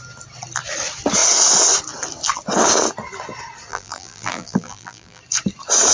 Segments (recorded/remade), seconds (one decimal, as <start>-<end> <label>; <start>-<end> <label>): 0.0-3.7 recorded; 3.7-5.2 remade; 5.2-5.9 recorded